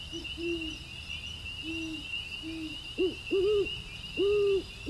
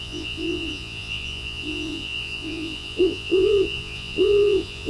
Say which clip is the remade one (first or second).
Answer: second